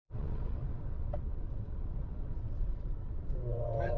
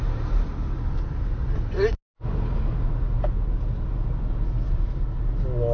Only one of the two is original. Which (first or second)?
second